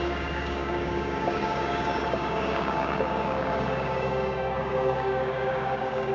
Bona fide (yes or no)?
no